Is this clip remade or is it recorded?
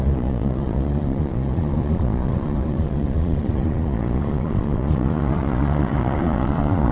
remade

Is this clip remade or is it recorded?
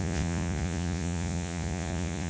remade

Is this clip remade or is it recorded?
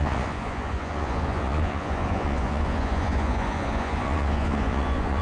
remade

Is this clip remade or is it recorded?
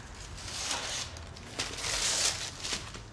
recorded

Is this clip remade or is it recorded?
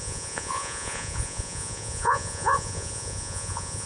remade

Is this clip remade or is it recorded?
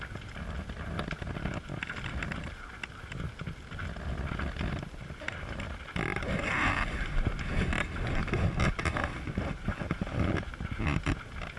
recorded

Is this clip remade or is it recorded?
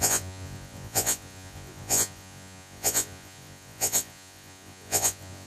remade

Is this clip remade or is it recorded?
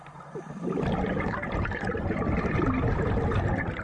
recorded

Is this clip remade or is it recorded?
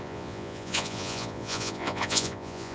remade